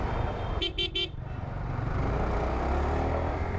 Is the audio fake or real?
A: real